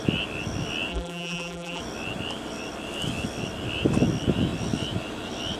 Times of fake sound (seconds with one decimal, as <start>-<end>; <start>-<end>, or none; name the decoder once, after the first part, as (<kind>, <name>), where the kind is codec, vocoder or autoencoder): 0.9-1.8 (vocoder, BigVGAN v2)